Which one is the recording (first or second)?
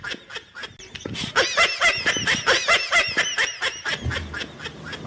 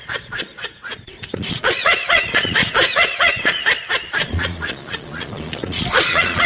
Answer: first